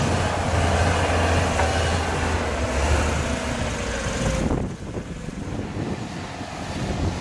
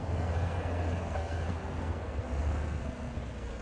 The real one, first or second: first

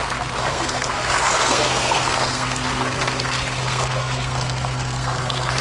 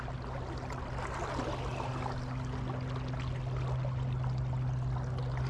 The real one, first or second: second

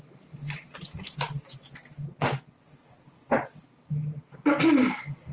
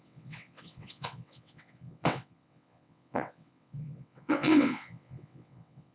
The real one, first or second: first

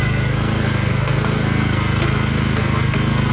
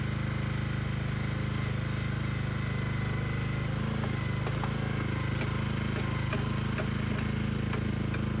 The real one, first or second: second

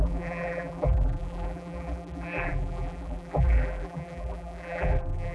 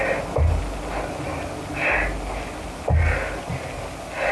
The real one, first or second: second